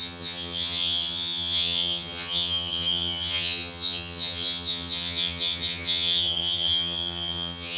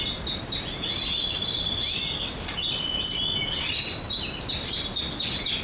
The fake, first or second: first